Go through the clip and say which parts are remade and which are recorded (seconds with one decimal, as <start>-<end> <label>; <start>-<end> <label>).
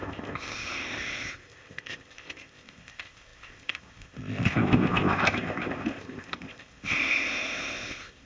0.0-8.3 remade